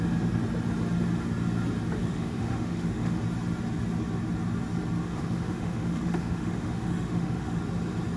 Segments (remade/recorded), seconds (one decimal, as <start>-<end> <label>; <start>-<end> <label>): 0.0-2.0 recorded; 2.0-3.2 remade; 3.2-5.0 recorded; 5.0-7.6 remade; 7.6-8.2 recorded